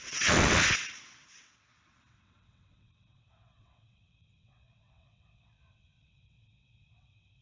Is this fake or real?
fake